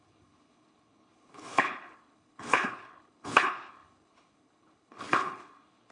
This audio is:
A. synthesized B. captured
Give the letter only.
A